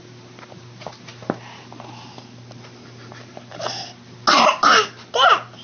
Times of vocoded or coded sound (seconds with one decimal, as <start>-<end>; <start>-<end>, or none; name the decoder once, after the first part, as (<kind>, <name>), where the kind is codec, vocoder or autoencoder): none